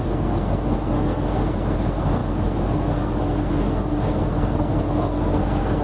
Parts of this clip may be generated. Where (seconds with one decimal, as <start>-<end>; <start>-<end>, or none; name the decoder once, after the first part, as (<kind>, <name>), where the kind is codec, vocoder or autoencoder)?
0.0-5.8 (codec, SNAC)